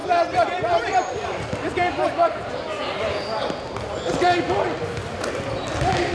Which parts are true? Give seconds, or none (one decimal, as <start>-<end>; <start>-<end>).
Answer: 2.5-6.1